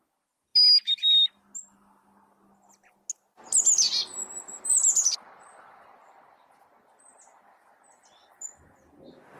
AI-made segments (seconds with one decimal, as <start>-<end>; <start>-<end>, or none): none